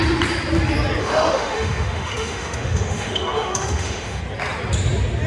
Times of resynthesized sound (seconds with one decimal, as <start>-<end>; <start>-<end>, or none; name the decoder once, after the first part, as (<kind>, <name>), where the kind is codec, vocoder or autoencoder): 1.0-4.2 (autoencoder, DAC-VAE)